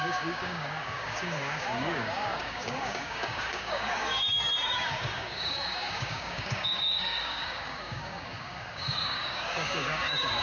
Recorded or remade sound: remade